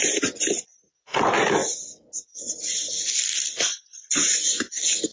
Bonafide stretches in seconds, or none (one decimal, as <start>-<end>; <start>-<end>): 0.0-5.1